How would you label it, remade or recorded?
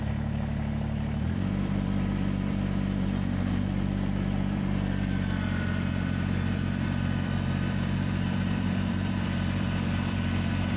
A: remade